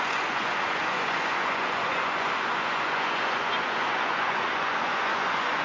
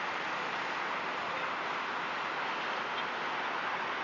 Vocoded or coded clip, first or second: first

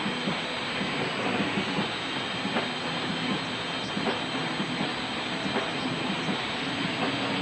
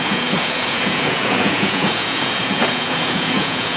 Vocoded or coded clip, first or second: second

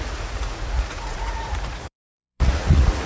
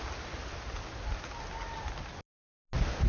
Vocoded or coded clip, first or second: first